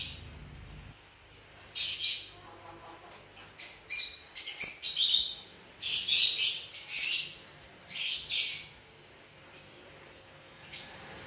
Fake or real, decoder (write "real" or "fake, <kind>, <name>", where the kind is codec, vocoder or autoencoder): real